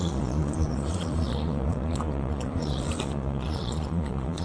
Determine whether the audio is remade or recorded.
remade